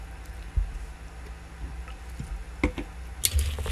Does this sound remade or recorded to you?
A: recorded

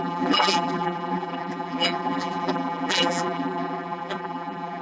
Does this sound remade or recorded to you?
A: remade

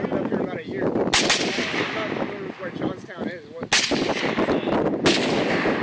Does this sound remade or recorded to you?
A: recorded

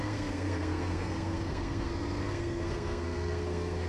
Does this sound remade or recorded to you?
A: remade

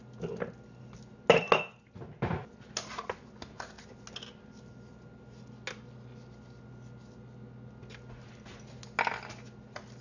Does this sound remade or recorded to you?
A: recorded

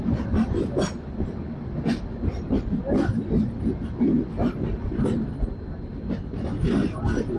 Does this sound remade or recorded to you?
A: recorded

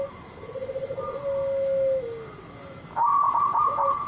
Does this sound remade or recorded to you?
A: recorded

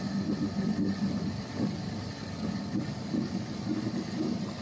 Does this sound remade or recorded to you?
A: recorded